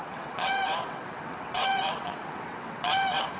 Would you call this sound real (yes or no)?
no